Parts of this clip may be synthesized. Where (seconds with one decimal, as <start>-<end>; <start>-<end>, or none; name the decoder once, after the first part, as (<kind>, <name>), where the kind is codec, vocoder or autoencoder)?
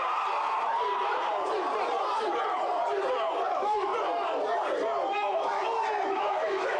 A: 3.5-3.9 (autoencoder, DAC-VAE); 5.1-5.6; 6.1-6.8